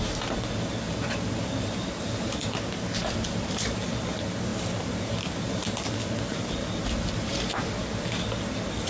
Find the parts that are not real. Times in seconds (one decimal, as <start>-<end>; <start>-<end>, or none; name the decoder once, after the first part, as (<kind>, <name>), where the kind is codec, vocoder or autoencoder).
none